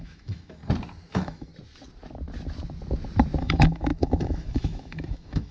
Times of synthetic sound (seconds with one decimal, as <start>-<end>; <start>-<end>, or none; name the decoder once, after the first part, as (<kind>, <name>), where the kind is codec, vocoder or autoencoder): 0.0-0.6 (autoencoder, DAC-VAE); 1.1-1.5; 3.4-5.5